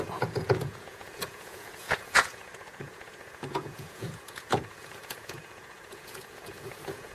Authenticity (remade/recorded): remade